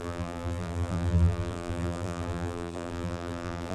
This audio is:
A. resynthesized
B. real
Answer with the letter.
A